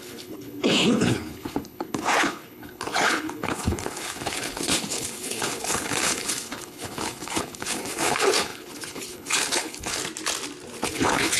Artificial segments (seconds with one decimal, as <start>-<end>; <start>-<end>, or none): 0.0-10.0; 10.8-11.4